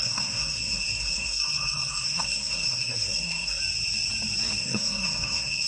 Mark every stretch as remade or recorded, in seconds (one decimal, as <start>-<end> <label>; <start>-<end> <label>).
0.0-3.6 remade; 3.6-4.6 recorded; 4.6-5.7 remade